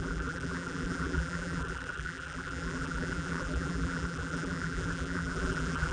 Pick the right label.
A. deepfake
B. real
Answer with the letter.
A